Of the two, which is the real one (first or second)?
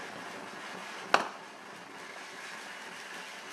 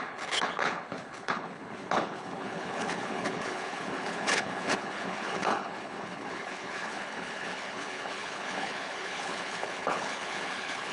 first